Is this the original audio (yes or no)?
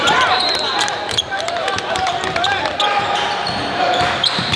no